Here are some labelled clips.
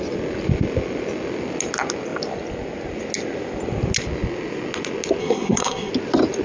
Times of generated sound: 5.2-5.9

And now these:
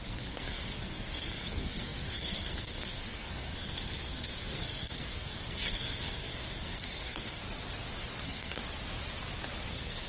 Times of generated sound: 0.0-7.4; 8.2-8.6; 9.7-10.1

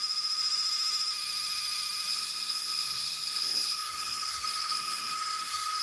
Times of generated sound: 2.1-5.8

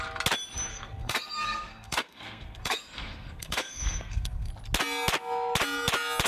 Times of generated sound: 0.7-4.5

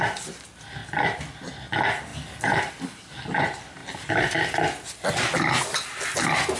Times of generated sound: none

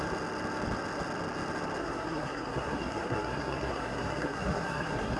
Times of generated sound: 1.8-5.2